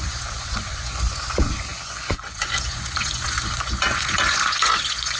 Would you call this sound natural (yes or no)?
no